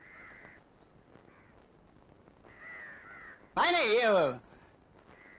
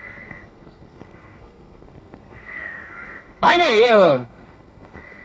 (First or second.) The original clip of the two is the first